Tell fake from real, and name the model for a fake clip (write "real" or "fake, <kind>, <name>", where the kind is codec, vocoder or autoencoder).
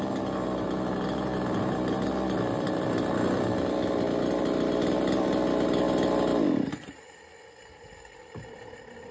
real